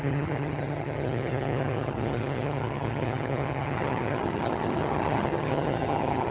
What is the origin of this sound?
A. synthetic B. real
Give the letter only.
A